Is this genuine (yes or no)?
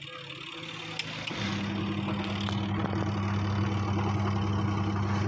yes